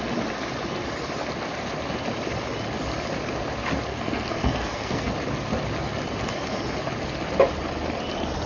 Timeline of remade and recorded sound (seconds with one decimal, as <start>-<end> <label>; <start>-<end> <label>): 0.0-3.9 recorded; 3.9-5.1 remade; 5.1-8.5 recorded